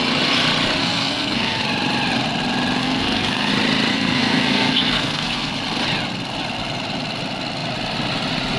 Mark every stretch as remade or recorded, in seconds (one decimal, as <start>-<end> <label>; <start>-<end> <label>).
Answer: 0.0-0.8 recorded; 0.8-1.6 remade; 1.6-2.8 recorded; 2.8-3.5 remade; 3.5-3.9 recorded; 3.9-5.5 remade; 5.5-8.6 recorded